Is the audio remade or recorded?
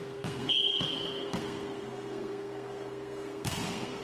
remade